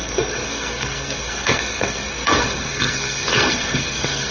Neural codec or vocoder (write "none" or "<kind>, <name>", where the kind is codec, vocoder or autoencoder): codec, SNAC